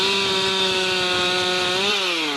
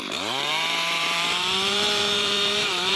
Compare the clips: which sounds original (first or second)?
first